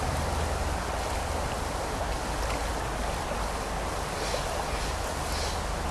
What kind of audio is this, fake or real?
real